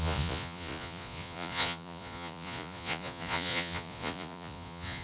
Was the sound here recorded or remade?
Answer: remade